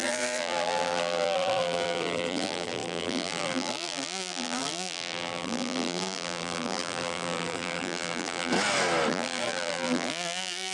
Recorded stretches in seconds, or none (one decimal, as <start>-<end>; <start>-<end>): 8.5-9.1